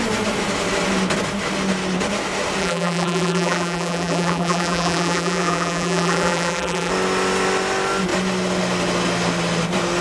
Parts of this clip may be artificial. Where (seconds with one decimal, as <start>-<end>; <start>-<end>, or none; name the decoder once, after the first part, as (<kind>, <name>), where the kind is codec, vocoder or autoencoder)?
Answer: 2.6-6.9 (vocoder, BigVGAN v2)